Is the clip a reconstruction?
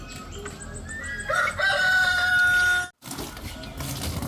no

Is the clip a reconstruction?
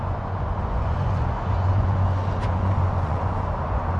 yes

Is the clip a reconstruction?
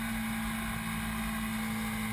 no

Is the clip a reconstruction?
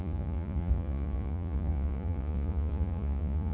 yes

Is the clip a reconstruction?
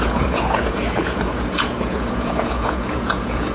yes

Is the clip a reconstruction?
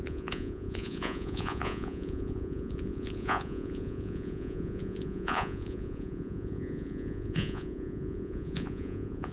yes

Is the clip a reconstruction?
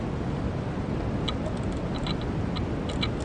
no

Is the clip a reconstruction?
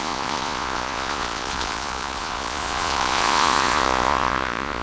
yes